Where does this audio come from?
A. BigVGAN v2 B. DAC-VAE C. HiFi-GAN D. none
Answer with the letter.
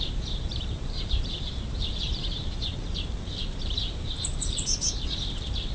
A